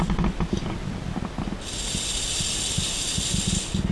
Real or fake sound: real